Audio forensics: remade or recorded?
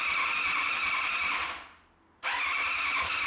recorded